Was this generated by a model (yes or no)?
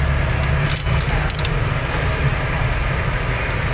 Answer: no